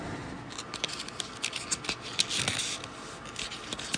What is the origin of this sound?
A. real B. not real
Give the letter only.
A